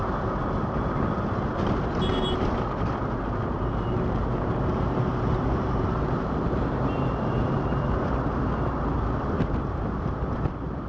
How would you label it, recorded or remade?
remade